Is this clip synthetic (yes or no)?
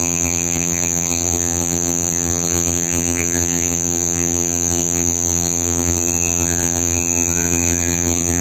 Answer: yes